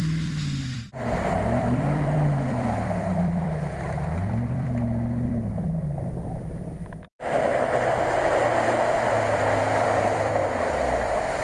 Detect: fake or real fake